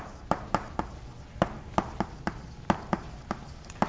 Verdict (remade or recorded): recorded